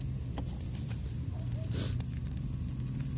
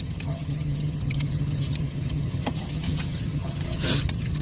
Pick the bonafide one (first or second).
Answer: first